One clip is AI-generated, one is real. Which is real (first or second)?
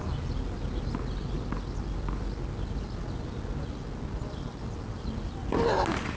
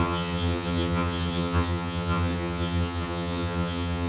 first